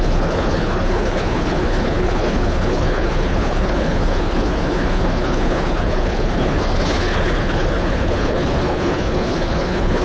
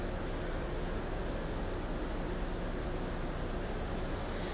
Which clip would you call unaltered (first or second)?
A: second